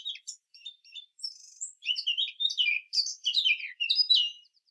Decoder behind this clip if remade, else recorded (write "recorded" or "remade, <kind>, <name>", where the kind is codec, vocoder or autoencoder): remade, vocoder, BigVGAN v2